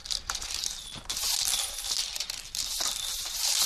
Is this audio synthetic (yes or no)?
no